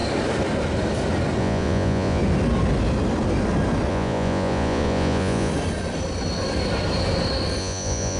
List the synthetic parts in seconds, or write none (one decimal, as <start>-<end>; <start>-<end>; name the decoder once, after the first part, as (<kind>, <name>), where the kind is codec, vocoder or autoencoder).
1.4-2.2 (vocoder, Vocos); 3.9-5.5; 7.6-8.2